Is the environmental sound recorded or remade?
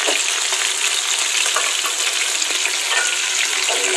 recorded